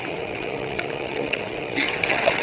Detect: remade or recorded remade